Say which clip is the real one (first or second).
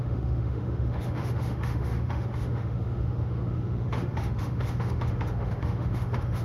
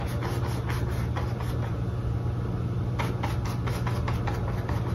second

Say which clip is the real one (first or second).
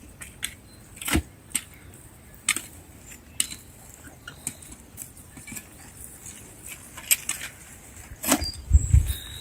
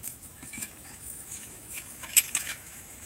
first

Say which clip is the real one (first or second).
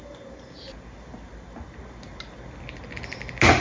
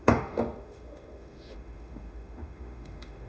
first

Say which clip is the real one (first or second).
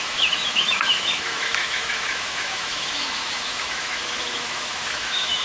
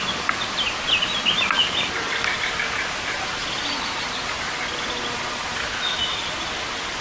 second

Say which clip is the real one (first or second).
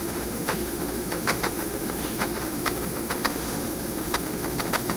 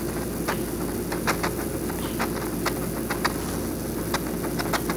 second